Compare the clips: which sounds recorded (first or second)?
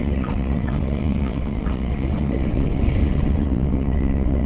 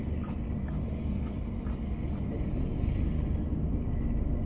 second